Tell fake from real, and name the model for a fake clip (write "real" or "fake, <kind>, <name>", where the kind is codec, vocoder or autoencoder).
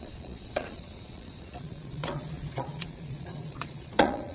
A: fake, vocoder, Vocos